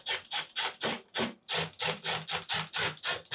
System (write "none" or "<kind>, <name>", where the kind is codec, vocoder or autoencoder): none